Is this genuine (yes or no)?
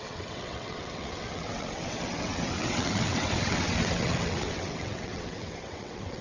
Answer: no